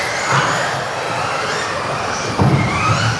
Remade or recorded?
recorded